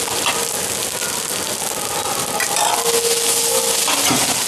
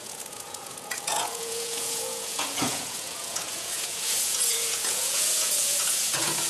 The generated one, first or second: second